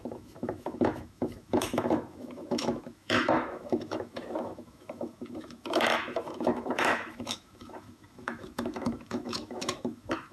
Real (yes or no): no